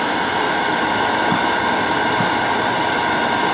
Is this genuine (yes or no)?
no